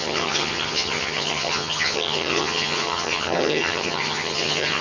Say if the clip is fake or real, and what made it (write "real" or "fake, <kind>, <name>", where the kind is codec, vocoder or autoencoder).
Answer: fake, vocoder, HiFi-GAN